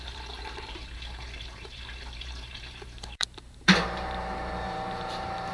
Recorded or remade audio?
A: remade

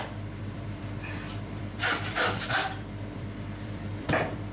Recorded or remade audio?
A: remade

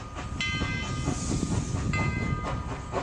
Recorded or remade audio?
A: recorded